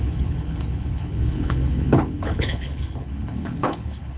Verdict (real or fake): fake